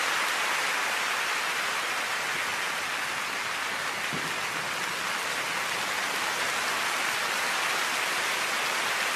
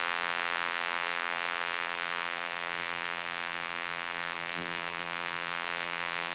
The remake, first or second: second